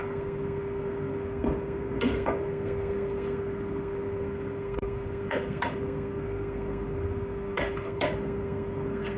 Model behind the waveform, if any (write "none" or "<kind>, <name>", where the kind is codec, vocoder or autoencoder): codec, SNAC